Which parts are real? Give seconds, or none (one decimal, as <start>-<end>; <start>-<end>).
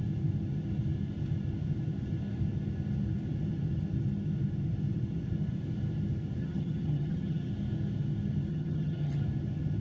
0.0-6.4; 7.5-8.5; 9.2-9.8